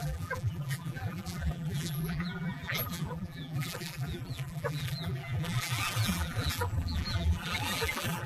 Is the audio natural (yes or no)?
no